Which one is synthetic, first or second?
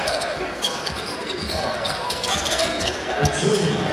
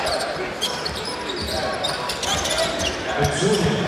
first